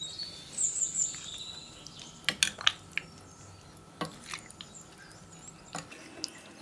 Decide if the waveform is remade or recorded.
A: recorded